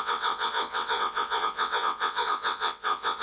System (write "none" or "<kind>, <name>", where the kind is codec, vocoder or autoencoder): vocoder, WaveNeXt